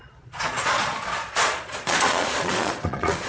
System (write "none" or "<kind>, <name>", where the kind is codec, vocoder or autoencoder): vocoder, Vocos